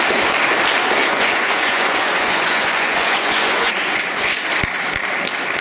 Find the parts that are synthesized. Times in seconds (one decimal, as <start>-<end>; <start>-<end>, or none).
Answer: 1.0-4.4